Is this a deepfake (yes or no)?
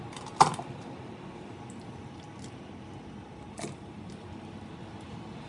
no